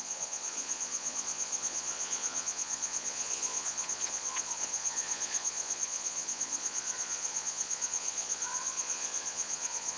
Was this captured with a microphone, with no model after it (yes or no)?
no